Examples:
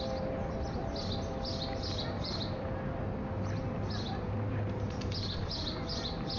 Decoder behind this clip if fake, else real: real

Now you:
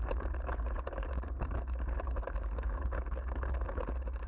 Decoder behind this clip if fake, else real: fake, codec, DAC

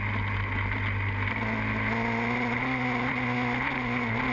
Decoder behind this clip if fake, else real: real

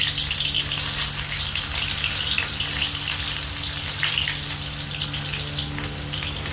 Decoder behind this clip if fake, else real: real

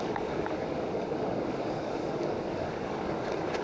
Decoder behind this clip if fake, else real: fake, codec, DAC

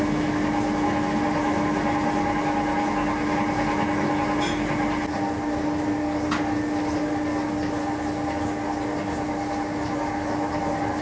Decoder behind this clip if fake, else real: real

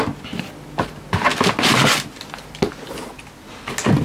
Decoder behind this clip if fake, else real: real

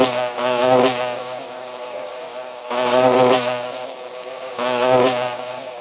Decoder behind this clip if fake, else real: fake, codec, DAC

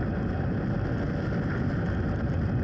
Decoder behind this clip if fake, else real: real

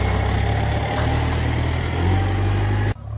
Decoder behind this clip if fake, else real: real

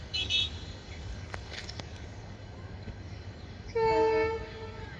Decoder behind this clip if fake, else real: fake, codec, DAC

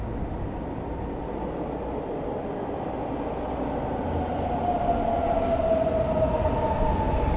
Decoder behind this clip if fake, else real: real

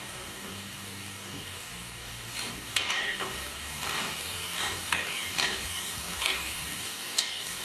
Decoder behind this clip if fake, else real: fake, codec, DAC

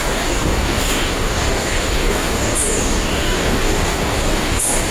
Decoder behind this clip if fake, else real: fake, codec, DAC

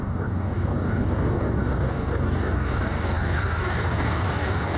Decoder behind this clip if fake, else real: fake, codec, DAC